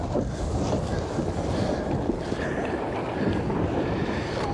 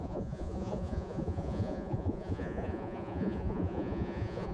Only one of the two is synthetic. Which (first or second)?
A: second